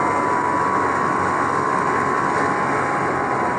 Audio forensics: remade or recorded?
recorded